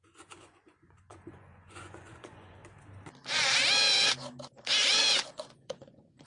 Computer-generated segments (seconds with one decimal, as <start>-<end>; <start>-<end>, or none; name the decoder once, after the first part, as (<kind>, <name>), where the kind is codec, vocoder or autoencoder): 0.0-2.6 (vocoder, Vocos); 5.3-6.3